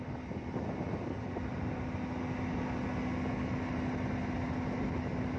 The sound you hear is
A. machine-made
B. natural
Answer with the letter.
B